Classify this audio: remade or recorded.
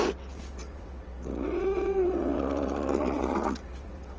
remade